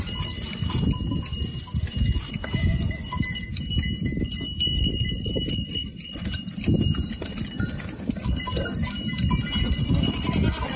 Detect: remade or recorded recorded